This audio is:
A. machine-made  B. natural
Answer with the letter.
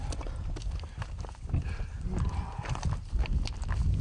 B